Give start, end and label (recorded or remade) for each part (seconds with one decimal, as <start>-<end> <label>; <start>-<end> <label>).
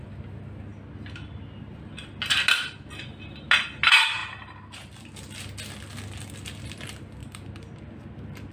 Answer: 0.0-7.2 recorded; 7.2-7.8 remade; 7.8-8.5 recorded